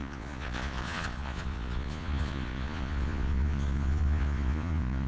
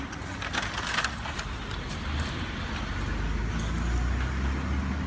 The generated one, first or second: first